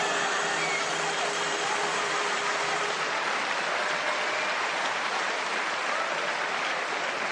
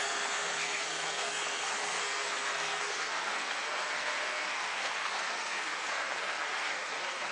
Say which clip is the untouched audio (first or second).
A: first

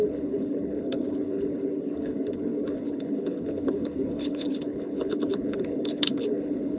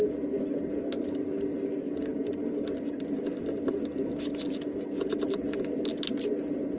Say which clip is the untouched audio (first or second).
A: second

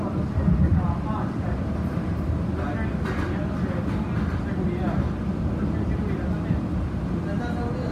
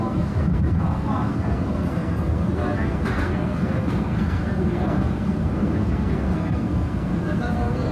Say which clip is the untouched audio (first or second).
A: first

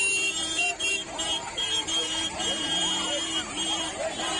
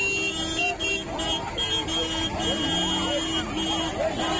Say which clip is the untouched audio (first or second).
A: second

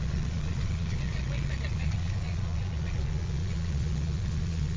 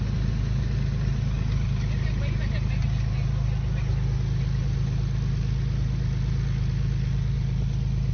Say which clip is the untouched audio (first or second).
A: second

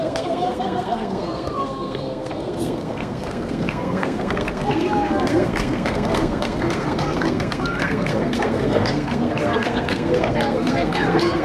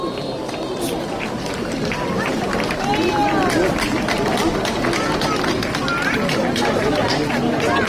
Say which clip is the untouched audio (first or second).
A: second